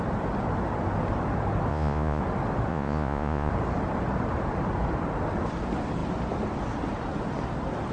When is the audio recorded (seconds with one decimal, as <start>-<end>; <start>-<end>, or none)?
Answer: 0.0-1.7; 2.2-2.7; 3.5-7.9